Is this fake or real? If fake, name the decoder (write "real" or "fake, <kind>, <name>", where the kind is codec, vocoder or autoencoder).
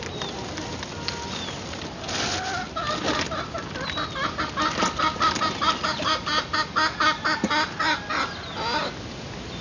real